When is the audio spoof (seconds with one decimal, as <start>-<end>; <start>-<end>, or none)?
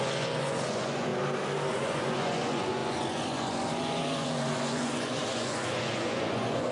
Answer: 0.0-1.1; 1.7-6.7